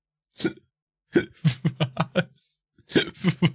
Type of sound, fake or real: real